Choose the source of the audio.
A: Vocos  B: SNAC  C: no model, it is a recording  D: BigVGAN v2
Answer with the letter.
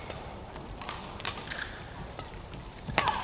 D